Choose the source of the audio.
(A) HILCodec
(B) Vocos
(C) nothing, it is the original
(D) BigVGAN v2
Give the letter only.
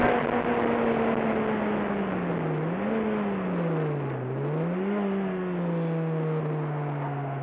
C